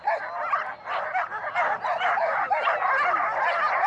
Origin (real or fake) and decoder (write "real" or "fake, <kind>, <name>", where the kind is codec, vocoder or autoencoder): fake, vocoder, BigVGAN v2